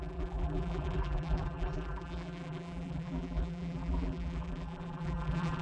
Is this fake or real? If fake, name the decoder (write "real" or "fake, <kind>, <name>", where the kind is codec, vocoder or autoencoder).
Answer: fake, vocoder, BigVGAN v2